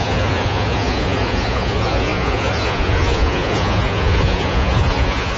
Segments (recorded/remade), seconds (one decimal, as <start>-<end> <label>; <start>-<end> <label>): 0.0-5.4 remade